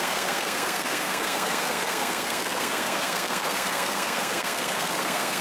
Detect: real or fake fake